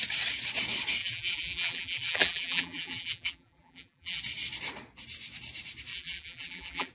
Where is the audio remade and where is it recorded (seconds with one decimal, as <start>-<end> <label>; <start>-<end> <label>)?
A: 0.0-1.0 recorded; 1.0-4.2 remade; 4.2-5.9 recorded; 5.9-6.9 remade